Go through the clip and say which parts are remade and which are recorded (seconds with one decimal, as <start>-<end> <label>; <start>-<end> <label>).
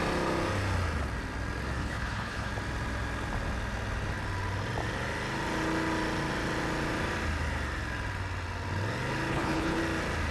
0.0-1.8 recorded; 1.8-2.5 remade; 2.5-9.3 recorded; 9.3-9.8 remade; 9.8-10.3 recorded